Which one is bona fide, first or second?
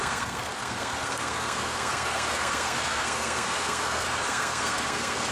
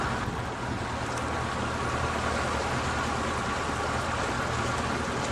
second